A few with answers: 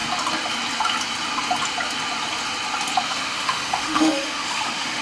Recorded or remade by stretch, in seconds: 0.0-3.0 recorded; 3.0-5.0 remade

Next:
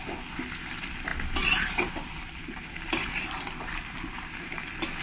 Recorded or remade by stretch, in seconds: 0.0-5.0 recorded

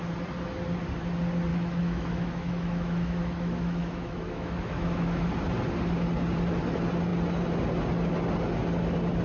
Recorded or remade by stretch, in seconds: 0.0-1.5 recorded; 1.5-5.3 remade; 5.3-9.2 recorded